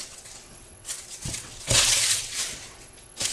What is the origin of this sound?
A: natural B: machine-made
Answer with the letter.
B